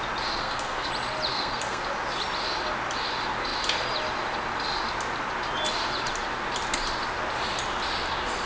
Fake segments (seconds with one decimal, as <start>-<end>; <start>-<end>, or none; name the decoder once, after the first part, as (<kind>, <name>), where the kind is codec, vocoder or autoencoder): 0.4-0.9 (codec, SNAC); 1.3-1.8